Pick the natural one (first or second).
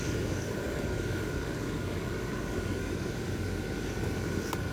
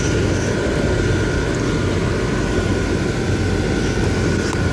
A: second